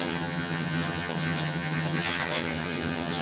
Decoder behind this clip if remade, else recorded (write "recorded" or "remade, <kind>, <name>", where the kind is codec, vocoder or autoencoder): remade, vocoder, HiFi-GAN